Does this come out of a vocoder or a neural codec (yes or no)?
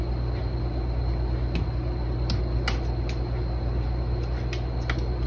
no